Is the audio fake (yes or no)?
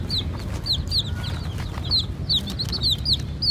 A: no